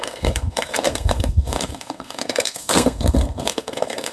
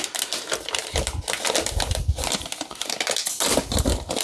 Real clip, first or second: second